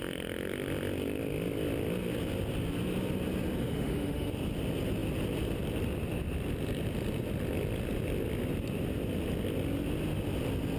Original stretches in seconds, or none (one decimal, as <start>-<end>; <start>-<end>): 0.0-3.6; 4.3-10.8